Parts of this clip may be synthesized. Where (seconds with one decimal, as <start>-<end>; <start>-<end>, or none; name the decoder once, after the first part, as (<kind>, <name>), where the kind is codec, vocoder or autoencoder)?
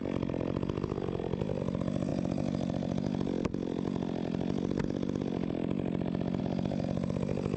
none